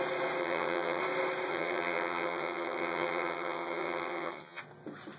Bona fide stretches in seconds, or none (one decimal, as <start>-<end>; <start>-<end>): 0.0-0.4; 1.0-1.5; 4.6-5.2